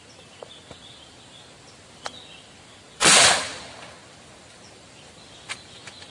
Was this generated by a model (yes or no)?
no